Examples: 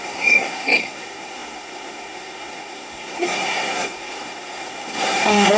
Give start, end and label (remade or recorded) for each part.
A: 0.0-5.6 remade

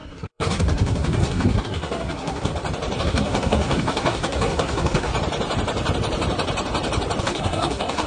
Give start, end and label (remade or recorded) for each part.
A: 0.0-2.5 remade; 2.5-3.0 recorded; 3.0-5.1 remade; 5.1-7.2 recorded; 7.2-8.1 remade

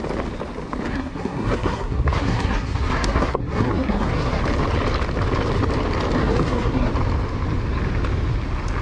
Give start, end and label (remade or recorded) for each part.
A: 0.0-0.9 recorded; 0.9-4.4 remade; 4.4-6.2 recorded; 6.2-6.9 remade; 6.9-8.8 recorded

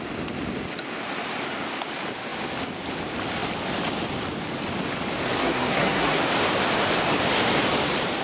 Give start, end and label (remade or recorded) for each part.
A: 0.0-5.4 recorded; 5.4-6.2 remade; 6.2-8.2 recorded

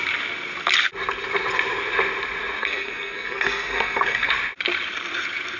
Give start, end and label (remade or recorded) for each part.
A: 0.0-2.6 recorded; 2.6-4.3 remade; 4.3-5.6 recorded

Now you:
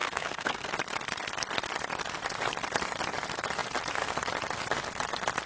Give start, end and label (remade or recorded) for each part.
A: 0.0-0.7 remade; 0.7-5.5 recorded